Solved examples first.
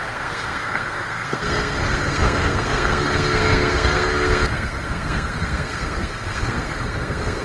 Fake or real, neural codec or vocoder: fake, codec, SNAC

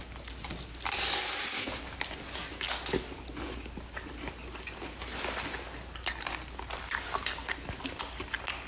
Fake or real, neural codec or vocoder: real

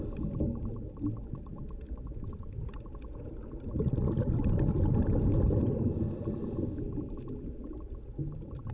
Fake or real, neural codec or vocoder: real